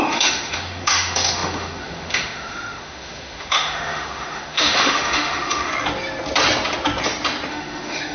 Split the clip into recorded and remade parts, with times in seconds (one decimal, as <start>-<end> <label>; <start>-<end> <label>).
0.0-5.7 remade; 5.7-7.5 recorded; 7.5-8.1 remade